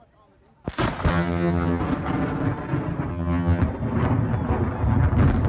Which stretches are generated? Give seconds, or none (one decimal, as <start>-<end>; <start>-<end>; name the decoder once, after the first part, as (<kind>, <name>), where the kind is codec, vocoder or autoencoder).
1.1-1.8 (vocoder, HiFi-GAN); 3.1-3.6

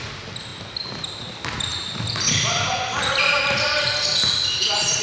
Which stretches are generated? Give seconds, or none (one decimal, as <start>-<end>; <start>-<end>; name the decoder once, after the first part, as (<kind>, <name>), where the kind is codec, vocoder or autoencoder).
none

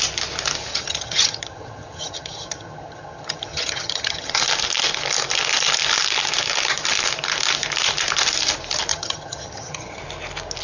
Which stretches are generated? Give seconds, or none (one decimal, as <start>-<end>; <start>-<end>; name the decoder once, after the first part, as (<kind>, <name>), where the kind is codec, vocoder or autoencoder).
0.7-4.4 (vocoder, HiFi-GAN); 8.9-10.0

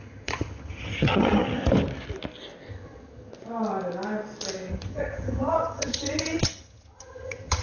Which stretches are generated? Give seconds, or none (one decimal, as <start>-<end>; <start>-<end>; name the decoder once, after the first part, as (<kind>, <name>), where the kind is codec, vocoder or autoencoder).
0.0-1.6 (vocoder, HiFi-GAN); 2.7-3.3; 4.7-7.6